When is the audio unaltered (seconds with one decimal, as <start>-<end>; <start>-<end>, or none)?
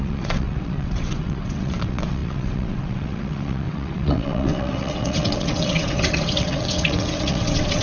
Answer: none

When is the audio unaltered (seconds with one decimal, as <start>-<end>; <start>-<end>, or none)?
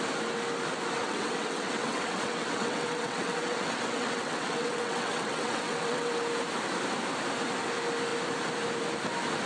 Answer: 0.0-1.0; 6.1-9.5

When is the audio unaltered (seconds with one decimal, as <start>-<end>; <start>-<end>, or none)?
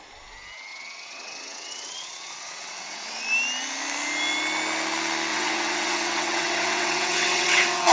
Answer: 0.0-0.7; 3.2-5.3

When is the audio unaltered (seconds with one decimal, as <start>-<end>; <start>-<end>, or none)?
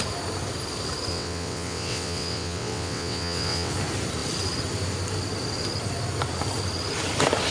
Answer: 0.0-1.1; 3.7-7.5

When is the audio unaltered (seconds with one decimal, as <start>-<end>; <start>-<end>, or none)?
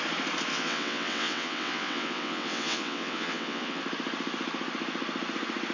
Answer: 0.0-0.5; 3.8-5.7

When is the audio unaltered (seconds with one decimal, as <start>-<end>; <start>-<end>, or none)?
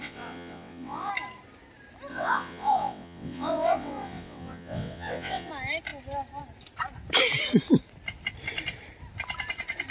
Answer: 1.1-2.1; 5.5-9.9